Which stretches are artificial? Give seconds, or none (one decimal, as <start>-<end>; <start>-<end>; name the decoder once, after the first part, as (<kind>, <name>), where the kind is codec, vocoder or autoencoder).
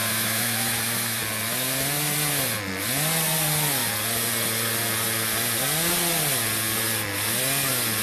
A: 0.0-1.2 (autoencoder, DAC-VAE)